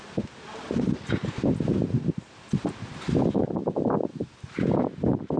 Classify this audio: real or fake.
fake